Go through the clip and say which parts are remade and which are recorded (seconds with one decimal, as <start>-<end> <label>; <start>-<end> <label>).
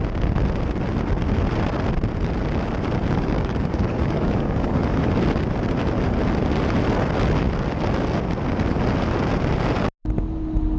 0.0-3.0 recorded; 3.0-5.1 remade; 5.1-10.8 recorded